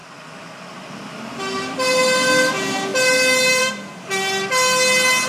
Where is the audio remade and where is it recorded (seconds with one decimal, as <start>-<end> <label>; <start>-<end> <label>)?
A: 0.0-5.3 recorded